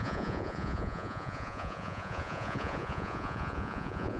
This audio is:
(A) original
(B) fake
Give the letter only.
B